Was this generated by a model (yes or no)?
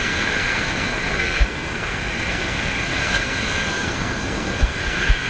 yes